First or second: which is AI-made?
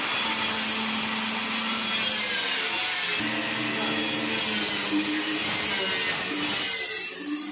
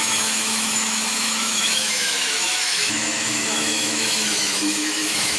second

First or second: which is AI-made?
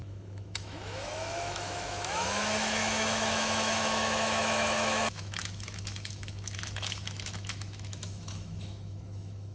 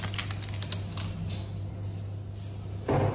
first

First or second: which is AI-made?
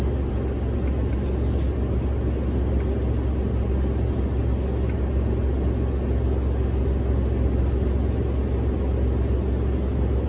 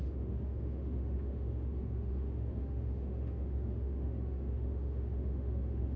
second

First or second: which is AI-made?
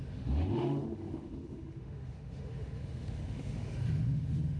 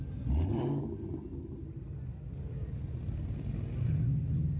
first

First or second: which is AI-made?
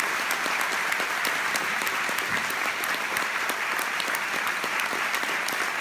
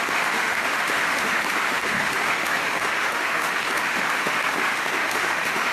second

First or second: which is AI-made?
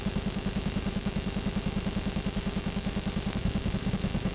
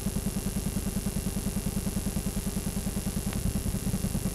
first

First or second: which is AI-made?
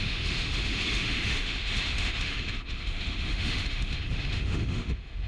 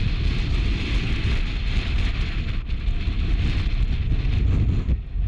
first